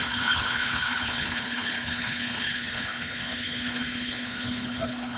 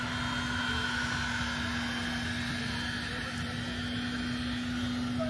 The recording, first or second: second